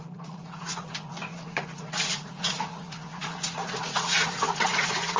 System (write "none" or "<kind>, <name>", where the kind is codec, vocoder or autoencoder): vocoder, Vocos